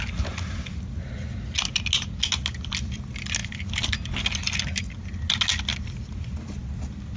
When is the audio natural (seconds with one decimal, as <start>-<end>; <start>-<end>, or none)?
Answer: 0.0-7.2